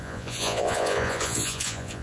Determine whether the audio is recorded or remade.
remade